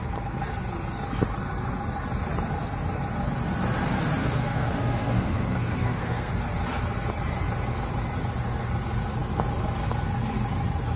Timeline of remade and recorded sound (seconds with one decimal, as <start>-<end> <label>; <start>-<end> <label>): 0.0-4.2 recorded; 4.2-6.3 remade; 6.3-11.0 recorded